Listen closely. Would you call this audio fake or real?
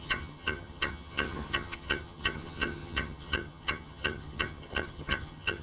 fake